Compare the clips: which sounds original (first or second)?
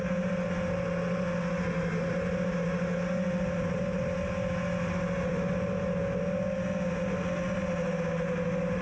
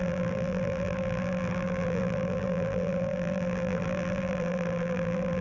first